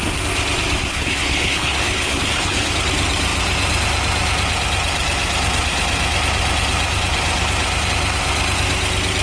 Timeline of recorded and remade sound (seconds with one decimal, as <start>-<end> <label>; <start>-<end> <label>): 0.0-0.9 recorded; 0.9-2.7 remade; 2.7-9.2 recorded

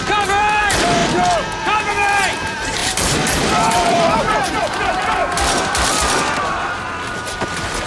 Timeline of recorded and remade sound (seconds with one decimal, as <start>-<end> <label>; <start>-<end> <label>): 0.0-1.0 remade; 1.0-1.9 recorded; 1.9-2.8 remade; 2.8-3.4 recorded; 3.4-5.2 remade; 5.2-7.2 recorded; 7.2-7.9 remade

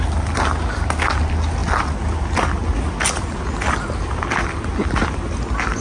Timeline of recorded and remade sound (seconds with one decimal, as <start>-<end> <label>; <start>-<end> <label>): 0.0-5.8 recorded

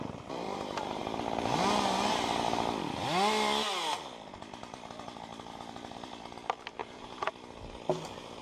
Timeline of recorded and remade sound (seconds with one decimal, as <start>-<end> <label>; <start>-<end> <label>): 0.0-6.8 recorded; 6.8-7.3 remade; 7.3-8.4 recorded

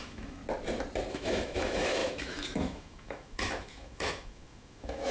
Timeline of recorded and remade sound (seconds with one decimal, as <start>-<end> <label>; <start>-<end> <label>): 0.0-0.4 remade; 0.4-1.1 recorded; 1.1-5.1 remade